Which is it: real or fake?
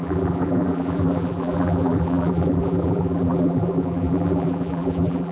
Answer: fake